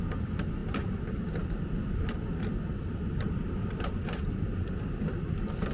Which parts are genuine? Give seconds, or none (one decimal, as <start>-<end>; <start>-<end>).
0.0-5.7